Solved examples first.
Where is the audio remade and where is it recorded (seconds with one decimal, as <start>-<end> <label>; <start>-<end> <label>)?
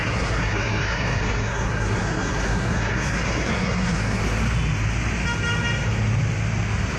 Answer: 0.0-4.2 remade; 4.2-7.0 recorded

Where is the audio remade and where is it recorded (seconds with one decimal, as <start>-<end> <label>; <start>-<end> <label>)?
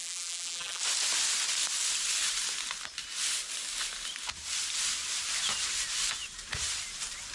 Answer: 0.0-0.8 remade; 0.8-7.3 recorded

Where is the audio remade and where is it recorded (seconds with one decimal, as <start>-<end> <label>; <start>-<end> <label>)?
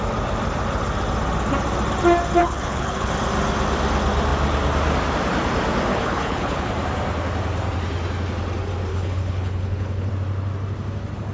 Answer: 0.0-2.4 recorded; 2.4-3.1 remade; 3.1-5.9 recorded; 5.9-6.7 remade; 6.7-8.9 recorded; 8.9-10.1 remade; 10.1-11.3 recorded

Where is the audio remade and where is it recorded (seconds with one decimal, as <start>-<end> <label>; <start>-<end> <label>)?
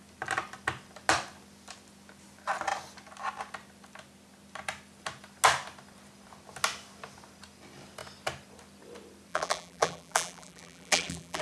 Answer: 0.0-9.3 recorded; 9.3-11.4 remade